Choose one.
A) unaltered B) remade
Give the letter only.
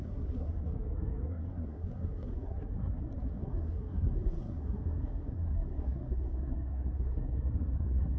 B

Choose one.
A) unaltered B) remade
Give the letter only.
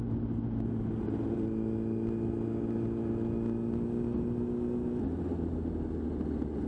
A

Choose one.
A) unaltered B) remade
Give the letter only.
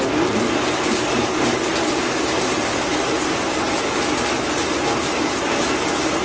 A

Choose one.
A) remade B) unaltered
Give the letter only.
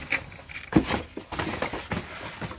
B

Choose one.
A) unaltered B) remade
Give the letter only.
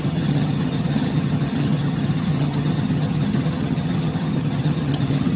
B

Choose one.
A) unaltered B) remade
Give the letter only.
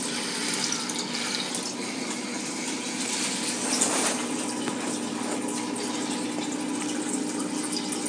A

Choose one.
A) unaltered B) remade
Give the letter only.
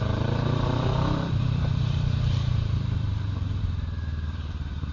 B